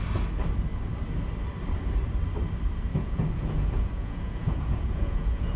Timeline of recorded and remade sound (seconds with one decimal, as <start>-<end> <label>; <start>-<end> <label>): 0.0-2.9 recorded; 2.9-5.6 remade